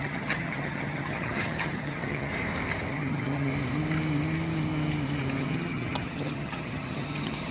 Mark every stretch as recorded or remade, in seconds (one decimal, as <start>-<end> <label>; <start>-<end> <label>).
0.0-2.3 remade; 2.3-2.9 recorded; 2.9-3.5 remade; 3.5-5.4 recorded; 5.4-7.5 remade